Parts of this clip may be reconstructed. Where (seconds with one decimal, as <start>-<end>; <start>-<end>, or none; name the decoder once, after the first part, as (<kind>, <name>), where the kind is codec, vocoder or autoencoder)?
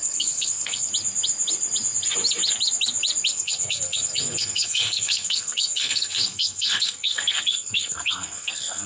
0.0-0.9 (codec, SNAC); 3.3-8.9